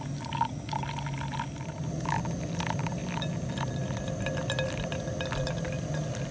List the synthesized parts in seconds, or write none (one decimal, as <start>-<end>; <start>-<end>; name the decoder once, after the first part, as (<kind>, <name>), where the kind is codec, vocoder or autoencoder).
none